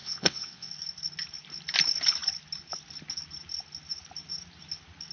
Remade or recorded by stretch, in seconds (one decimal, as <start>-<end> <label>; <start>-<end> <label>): 0.0-0.7 remade; 0.7-5.1 recorded